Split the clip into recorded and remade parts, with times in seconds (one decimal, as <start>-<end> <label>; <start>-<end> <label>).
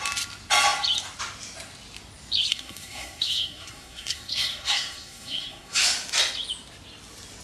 0.0-2.5 recorded; 2.5-5.8 remade; 5.8-7.4 recorded